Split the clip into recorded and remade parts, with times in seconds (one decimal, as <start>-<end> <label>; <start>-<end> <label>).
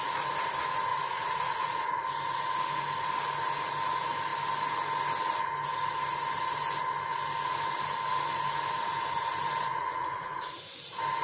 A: 0.0-0.9 recorded; 0.9-2.0 remade; 2.0-9.7 recorded; 9.7-10.6 remade; 10.6-11.2 recorded